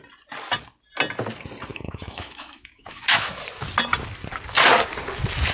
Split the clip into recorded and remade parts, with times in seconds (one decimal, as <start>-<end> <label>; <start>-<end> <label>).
0.0-1.7 recorded; 1.7-3.4 remade; 3.4-5.5 recorded